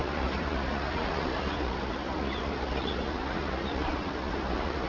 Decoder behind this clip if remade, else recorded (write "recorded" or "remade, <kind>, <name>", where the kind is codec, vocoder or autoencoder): remade, vocoder, Vocos